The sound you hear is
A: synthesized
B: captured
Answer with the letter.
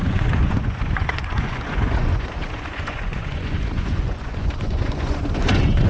A